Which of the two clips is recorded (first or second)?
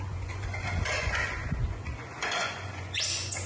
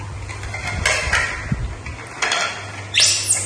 second